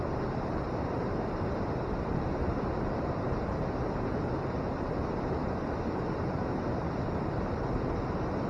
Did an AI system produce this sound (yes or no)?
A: no